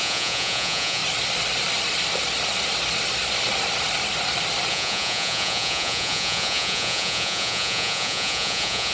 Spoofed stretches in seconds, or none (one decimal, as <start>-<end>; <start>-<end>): 0.0-1.0; 4.7-8.9